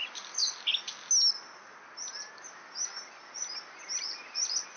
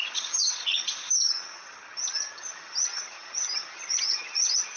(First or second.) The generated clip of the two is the second